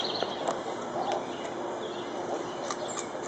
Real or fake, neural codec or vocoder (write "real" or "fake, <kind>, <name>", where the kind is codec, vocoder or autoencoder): real